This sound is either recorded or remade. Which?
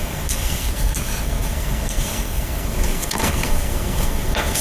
remade